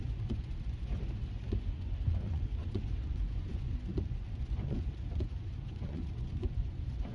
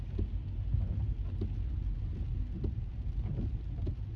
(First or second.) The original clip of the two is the second